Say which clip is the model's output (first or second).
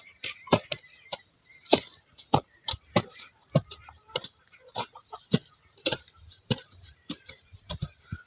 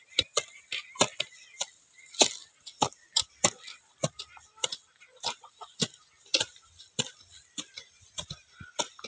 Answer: first